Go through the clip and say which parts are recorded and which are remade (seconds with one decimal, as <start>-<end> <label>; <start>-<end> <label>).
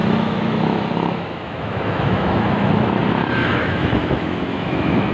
0.0-3.0 remade; 3.0-3.6 recorded; 3.6-5.1 remade